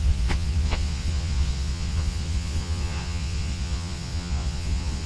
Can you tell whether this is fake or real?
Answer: fake